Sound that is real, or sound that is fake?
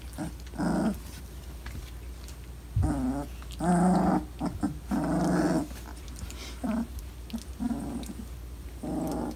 real